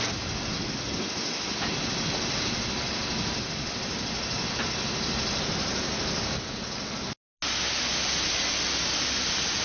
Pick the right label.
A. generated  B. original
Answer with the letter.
B